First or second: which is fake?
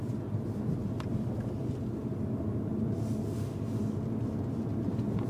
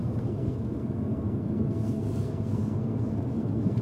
second